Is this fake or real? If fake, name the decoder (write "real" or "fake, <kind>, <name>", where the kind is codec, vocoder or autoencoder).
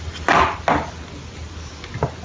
real